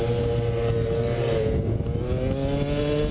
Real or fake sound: real